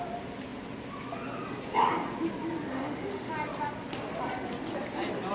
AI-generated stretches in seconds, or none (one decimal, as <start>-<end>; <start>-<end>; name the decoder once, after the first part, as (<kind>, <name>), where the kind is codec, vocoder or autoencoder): 2.7-3.3 (autoencoder, DAC-VAE)